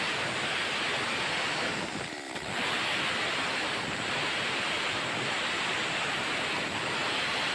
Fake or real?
real